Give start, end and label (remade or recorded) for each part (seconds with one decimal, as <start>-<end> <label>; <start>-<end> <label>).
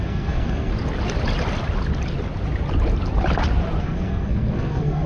0.0-0.7 remade; 0.7-3.8 recorded; 3.8-5.1 remade